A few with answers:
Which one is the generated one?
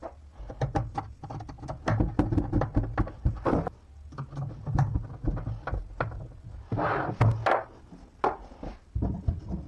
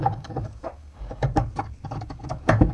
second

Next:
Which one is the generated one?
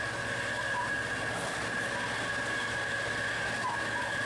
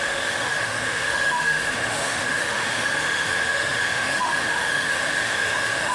second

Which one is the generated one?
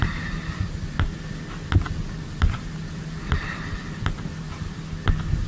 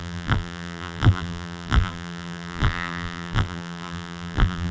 second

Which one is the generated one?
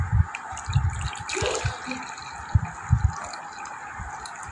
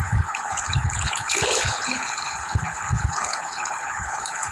second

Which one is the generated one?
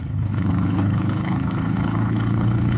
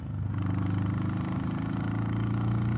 first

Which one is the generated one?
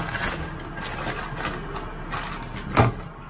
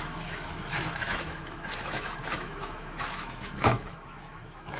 second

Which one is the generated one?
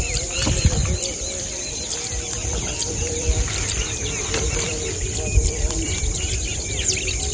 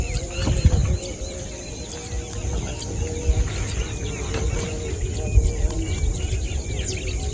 first